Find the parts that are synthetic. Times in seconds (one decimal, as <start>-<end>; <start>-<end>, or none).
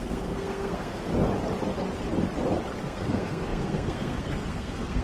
0.0-1.1; 2.8-5.0